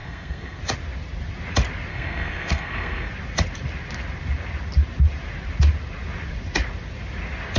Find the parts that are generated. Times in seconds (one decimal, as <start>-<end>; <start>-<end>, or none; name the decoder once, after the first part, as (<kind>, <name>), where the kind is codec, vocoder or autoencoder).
0.0-0.6 (codec, SNAC); 1.9-3.1

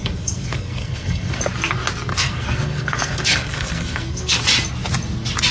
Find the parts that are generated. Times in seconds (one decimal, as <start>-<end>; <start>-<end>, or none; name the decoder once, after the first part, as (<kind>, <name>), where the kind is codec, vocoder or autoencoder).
0.0-1.4 (codec, SNAC); 2.1-4.4

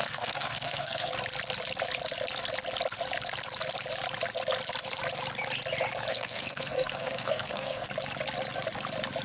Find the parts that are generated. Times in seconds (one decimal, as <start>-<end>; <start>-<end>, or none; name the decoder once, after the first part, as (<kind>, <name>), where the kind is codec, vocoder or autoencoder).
0.0-1.1 (codec, SNAC); 6.1-7.9

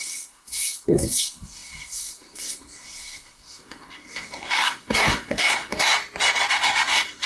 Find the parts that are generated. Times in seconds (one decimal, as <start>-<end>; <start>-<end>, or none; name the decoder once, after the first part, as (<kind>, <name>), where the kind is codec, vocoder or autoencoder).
0.0-5.9 (codec, SNAC); 6.5-7.3